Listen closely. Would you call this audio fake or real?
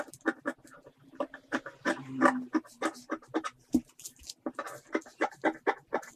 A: real